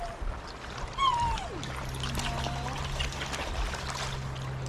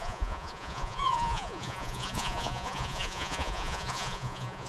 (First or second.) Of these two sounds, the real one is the first